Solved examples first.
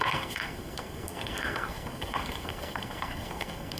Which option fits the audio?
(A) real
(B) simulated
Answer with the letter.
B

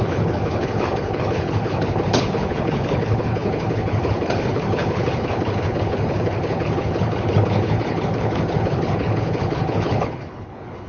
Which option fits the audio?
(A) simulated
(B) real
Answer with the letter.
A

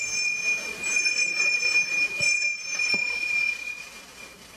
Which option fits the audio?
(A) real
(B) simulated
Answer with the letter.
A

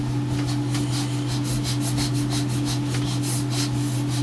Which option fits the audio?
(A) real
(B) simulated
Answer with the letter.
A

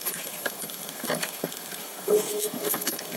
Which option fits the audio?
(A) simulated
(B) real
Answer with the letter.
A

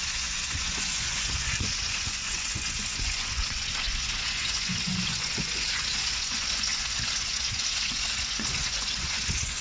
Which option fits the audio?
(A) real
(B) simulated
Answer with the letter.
B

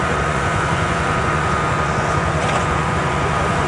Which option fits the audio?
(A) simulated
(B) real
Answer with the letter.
A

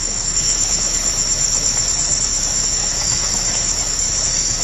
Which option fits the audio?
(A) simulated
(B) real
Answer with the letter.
A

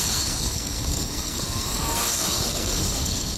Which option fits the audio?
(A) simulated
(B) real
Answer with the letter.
A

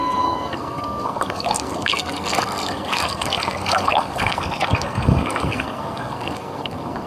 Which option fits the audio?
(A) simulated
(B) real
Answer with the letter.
A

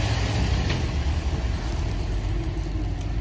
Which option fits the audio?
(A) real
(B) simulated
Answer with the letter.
A